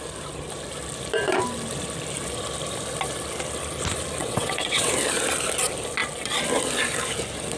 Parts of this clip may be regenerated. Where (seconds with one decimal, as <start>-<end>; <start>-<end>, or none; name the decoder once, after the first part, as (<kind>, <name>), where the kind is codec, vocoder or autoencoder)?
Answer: 4.2-4.9 (vocoder, WaveNeXt)